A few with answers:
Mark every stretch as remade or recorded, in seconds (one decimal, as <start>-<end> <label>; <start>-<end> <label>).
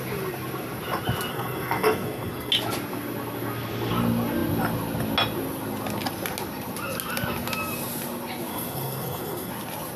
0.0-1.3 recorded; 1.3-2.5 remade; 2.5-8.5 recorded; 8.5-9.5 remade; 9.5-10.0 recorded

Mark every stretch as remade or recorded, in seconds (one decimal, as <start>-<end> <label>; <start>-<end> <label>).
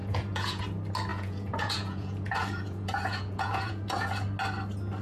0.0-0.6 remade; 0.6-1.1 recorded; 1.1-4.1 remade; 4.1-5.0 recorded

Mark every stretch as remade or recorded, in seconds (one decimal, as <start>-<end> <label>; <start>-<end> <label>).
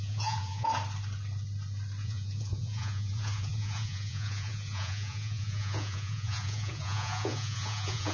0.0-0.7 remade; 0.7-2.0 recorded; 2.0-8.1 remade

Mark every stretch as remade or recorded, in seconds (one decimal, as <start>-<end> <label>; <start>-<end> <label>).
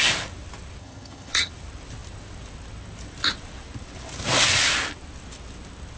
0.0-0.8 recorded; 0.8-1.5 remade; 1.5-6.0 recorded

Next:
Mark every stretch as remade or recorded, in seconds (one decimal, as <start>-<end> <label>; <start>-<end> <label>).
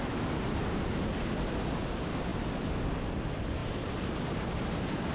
0.0-3.6 recorded; 3.6-5.1 remade